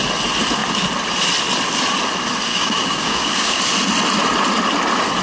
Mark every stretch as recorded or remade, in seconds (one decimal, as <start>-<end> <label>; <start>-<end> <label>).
0.0-2.5 recorded; 2.5-3.6 remade; 3.6-5.2 recorded